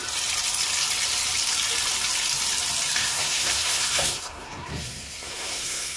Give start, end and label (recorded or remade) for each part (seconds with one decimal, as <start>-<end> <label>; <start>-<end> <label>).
0.0-3.0 recorded; 3.0-6.0 remade